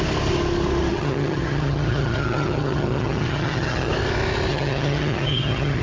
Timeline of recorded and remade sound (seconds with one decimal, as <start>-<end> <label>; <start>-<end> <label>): 0.0-0.9 recorded; 0.9-3.9 remade; 3.9-4.5 recorded; 4.5-5.8 remade